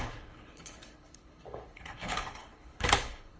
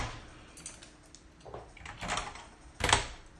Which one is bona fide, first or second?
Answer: second